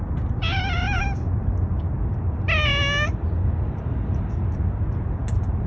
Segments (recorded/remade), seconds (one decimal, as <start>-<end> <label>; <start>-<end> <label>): 0.0-5.7 recorded